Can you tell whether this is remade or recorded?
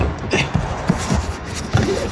remade